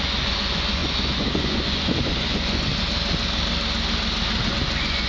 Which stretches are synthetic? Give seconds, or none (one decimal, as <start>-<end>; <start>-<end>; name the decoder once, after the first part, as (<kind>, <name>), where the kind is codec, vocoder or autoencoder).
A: 0.0-2.7 (vocoder, Vocos); 4.5-5.1